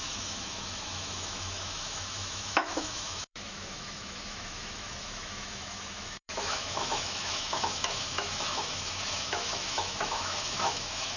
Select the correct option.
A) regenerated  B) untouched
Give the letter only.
A